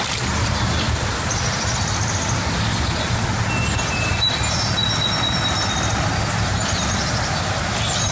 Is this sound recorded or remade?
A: recorded